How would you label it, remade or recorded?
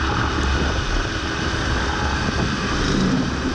remade